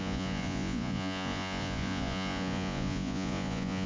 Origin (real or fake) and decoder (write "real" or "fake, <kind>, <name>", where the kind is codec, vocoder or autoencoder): fake, vocoder, Vocos